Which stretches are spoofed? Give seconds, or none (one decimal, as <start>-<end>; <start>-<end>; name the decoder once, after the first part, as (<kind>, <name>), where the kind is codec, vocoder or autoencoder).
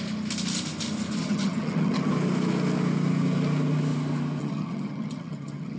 1.2-2.1 (vocoder, HiFi-GAN); 4.4-5.8